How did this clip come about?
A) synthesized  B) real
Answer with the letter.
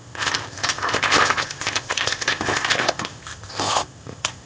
A